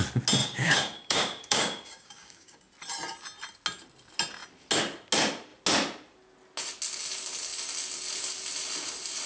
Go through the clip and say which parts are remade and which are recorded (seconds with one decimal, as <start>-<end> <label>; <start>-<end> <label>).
0.0-0.4 recorded; 0.4-2.6 remade; 2.6-9.3 recorded